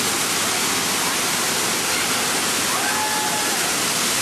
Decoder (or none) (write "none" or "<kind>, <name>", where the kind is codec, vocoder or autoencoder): none